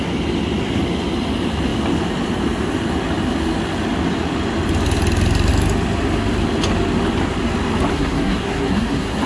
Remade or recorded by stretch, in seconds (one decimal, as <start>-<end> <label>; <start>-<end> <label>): 0.0-7.9 recorded; 7.9-9.3 remade